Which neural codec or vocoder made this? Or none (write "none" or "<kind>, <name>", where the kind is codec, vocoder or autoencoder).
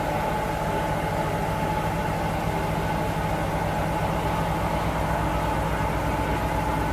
none